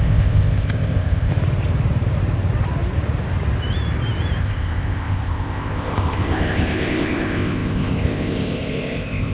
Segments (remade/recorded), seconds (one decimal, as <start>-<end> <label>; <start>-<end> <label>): 0.0-1.3 remade; 1.3-4.4 recorded; 4.4-9.3 remade